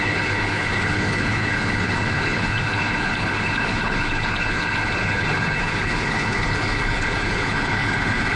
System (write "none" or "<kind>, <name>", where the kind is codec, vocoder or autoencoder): codec, HILCodec